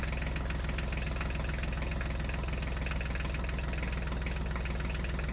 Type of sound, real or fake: real